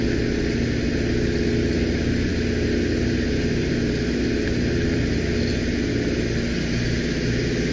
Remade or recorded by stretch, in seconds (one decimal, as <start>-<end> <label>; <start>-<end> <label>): 0.0-7.7 recorded